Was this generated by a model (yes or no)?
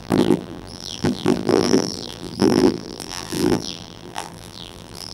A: yes